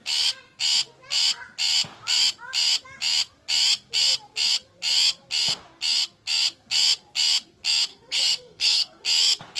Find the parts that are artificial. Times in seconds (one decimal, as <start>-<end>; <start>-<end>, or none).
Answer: 7.9-9.0